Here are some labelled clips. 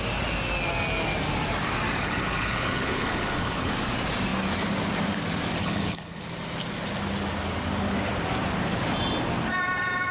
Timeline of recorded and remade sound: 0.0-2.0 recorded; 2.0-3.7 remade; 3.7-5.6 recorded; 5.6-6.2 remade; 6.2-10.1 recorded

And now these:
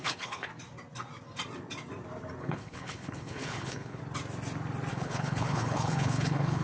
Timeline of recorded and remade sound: 0.0-0.5 remade; 0.5-2.4 recorded; 2.4-4.0 remade; 4.0-4.9 recorded; 4.9-6.6 remade

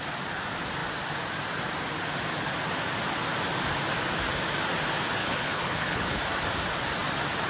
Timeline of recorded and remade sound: 0.0-5.2 recorded; 5.2-6.2 remade; 6.2-7.5 recorded

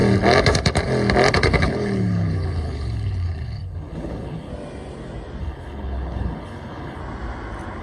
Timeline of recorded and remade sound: 0.0-1.3 recorded; 1.3-4.5 remade; 4.5-5.4 recorded; 5.4-7.0 remade; 7.0-7.8 recorded

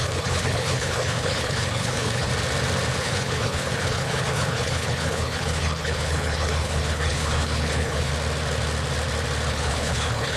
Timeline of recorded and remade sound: 0.0-2.3 remade; 2.3-3.0 recorded; 3.0-8.1 remade; 8.1-9.5 recorded; 9.5-10.4 remade

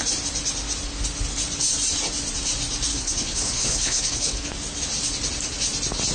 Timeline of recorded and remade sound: 0.0-2.9 recorded; 2.9-4.5 remade; 4.5-6.1 recorded

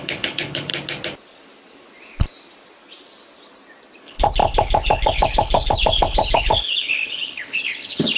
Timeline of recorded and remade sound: 0.0-0.7 remade; 0.7-4.0 recorded; 4.0-8.2 remade

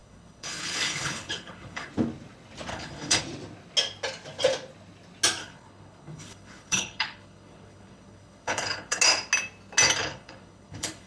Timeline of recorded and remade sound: 0.0-1.9 remade; 1.9-2.7 recorded; 2.7-3.2 remade; 3.2-5.4 recorded; 5.4-9.0 remade; 9.0-10.0 recorded; 10.0-11.1 remade